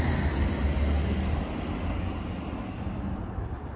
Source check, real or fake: real